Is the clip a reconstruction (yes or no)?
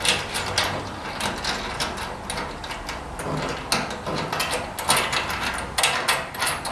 no